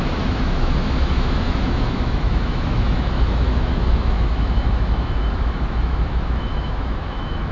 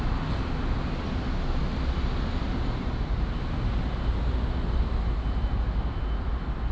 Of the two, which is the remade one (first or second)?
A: first